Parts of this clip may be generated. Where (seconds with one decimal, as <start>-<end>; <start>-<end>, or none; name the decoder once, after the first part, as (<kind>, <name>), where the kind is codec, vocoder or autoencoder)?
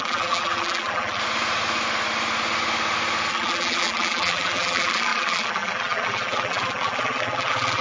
0.0-1.2 (vocoder, BigVGAN v2); 3.3-7.8